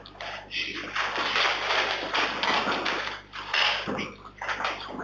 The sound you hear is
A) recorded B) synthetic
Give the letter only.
A